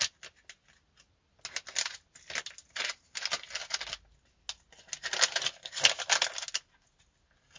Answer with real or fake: real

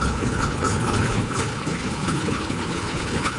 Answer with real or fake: fake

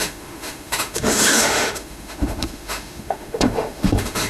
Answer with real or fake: fake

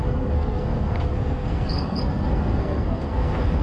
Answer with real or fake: fake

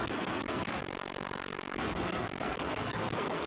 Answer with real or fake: fake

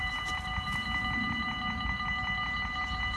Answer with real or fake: real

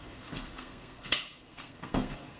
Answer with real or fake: fake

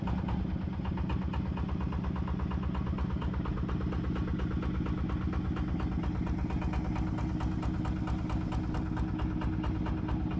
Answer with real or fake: real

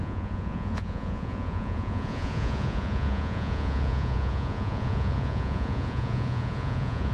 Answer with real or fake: fake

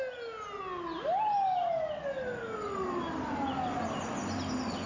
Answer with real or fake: real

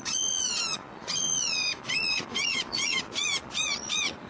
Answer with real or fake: fake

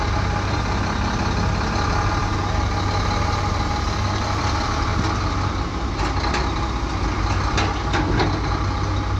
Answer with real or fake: real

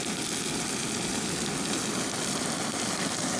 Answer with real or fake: real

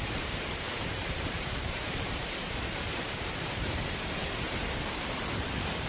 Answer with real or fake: fake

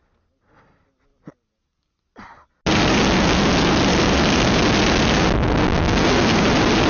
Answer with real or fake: real